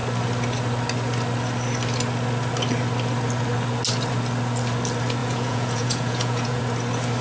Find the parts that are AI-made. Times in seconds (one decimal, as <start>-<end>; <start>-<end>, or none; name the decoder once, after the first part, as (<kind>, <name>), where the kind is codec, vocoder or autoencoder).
5.2-6.6 (vocoder, Vocos)